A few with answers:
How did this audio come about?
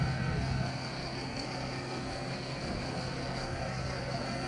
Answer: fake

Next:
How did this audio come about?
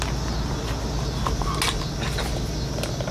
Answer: real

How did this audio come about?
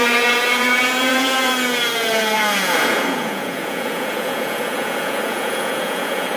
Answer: fake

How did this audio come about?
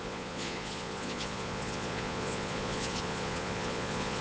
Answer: fake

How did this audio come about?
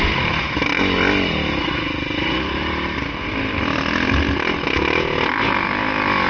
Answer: real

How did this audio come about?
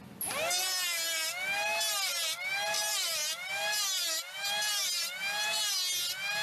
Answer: real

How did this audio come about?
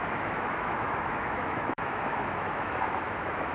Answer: fake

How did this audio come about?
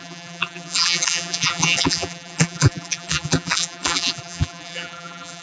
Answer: fake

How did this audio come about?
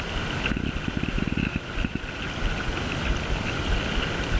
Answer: real